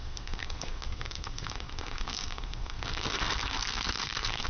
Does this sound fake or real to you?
fake